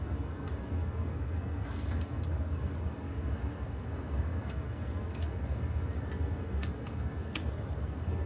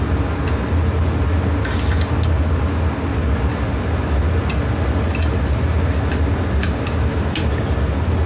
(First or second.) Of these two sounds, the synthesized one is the first